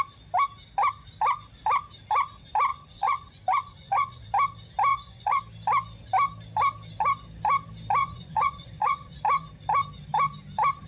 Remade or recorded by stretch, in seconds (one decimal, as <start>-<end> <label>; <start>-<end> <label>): 0.0-2.7 recorded; 2.7-4.3 remade; 4.3-4.9 recorded; 4.9-5.4 remade; 5.4-8.0 recorded; 8.0-9.2 remade; 9.2-10.9 recorded